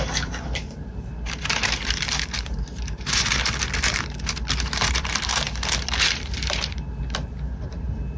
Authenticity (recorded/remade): remade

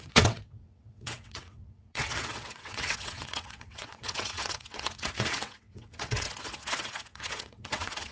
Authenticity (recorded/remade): remade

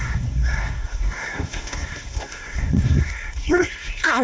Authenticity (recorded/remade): remade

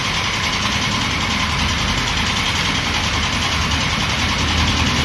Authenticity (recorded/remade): recorded